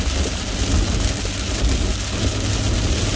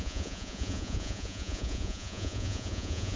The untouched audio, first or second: first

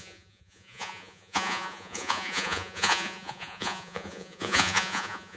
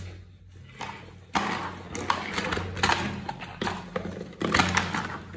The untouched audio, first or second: second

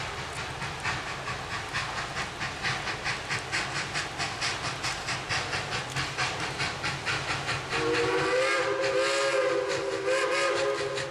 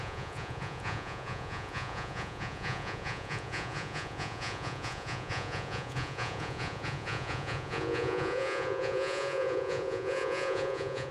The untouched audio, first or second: first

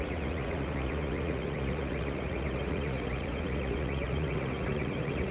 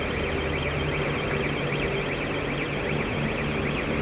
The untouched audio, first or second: second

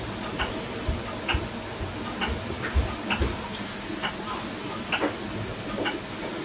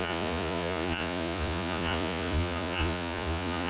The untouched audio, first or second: first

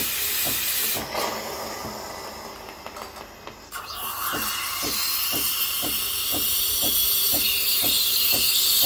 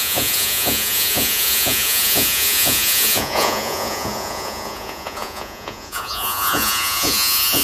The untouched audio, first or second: first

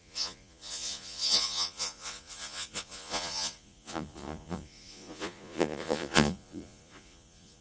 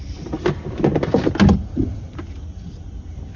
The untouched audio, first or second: second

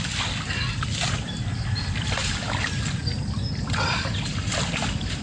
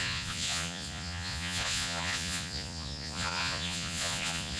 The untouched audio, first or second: first